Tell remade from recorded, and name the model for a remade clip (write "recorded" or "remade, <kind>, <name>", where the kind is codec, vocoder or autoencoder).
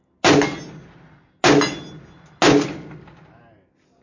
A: recorded